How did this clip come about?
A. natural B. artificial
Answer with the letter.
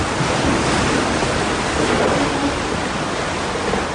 A